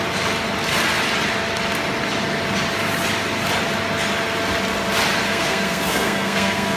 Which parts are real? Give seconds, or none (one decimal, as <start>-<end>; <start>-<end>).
0.0-5.3